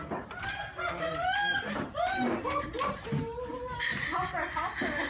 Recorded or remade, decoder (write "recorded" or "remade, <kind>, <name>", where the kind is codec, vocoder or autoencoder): recorded